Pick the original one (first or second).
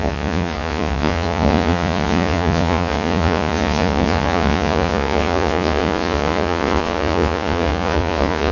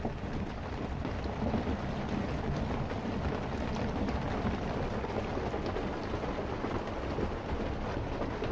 second